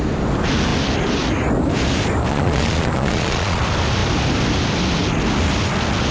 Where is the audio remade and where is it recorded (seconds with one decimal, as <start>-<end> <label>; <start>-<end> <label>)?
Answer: 0.0-2.3 recorded; 2.3-3.6 remade; 3.6-6.1 recorded